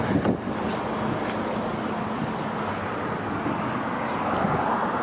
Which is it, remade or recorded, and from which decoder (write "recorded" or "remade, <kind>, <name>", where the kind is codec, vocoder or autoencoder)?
recorded